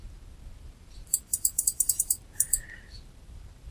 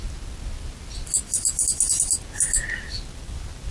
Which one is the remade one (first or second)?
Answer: first